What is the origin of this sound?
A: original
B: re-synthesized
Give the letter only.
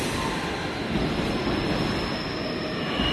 A